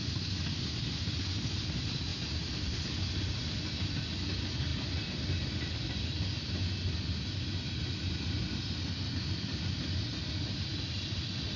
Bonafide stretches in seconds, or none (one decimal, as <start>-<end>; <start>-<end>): 0.0-2.1; 3.0-4.7; 5.7-11.6